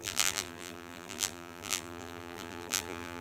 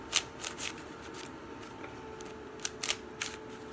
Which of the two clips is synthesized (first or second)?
first